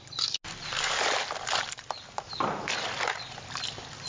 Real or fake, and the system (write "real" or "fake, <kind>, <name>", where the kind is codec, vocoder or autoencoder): real